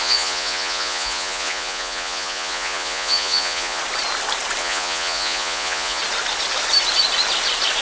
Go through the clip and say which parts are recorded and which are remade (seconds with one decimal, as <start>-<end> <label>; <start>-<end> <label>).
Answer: 0.0-3.8 remade; 3.8-4.6 recorded; 4.6-6.0 remade; 6.0-7.8 recorded